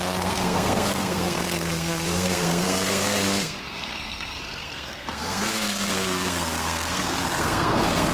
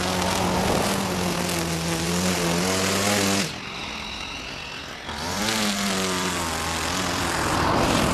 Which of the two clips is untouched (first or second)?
second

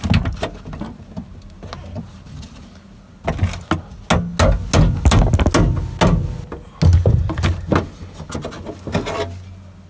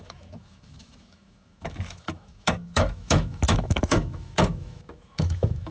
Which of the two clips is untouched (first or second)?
first